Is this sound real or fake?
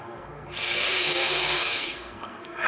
fake